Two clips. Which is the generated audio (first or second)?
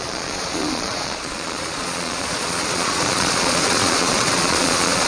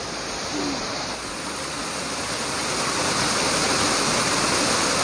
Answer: first